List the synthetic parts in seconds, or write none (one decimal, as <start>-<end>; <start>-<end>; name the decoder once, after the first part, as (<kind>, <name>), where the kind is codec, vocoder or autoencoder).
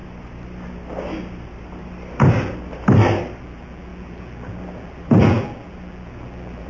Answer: 3.4-6.7 (vocoder, BigVGAN v2)